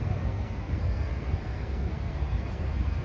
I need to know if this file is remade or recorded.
remade